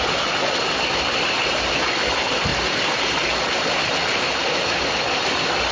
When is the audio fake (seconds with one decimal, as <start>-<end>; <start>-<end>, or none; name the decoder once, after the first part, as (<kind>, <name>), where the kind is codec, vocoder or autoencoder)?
none